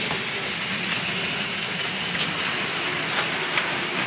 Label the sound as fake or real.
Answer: real